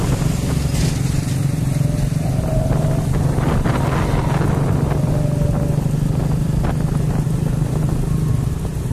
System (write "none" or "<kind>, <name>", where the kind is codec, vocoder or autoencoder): none